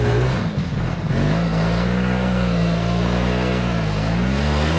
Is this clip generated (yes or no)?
yes